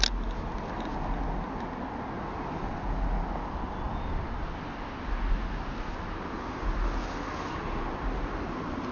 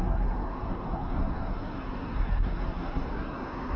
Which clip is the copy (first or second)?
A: second